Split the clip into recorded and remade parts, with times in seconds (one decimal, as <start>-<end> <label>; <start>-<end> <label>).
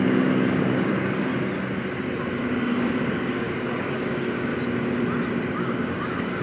0.0-1.3 remade; 1.3-2.4 recorded; 2.4-4.5 remade; 4.5-5.6 recorded; 5.6-6.4 remade